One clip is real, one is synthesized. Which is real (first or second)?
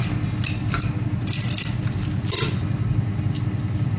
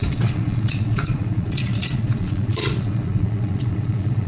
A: first